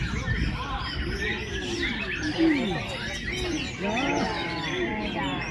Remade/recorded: recorded